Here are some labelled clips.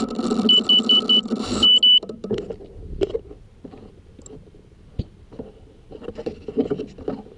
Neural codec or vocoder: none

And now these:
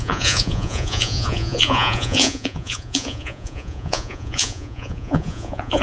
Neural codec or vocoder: vocoder, Vocos